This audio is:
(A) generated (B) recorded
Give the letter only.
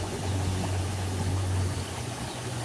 A